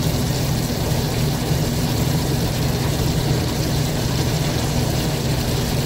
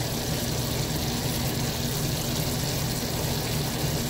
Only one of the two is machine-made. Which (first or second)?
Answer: first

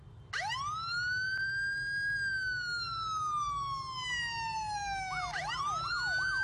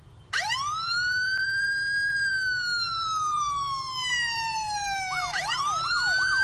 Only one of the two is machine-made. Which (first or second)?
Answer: second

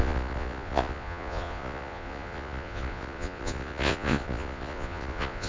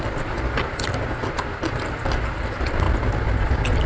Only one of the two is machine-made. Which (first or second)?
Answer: first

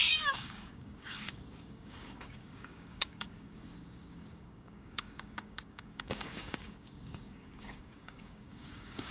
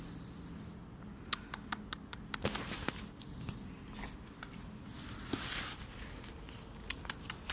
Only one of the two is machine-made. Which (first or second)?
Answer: first